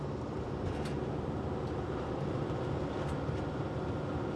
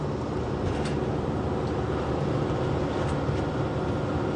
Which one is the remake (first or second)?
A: first